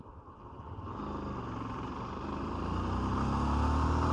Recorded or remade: recorded